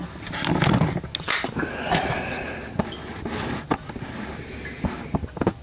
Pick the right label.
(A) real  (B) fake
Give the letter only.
A